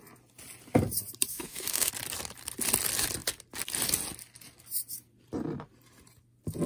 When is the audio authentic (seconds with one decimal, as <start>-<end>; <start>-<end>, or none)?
0.0-1.3; 1.9-6.7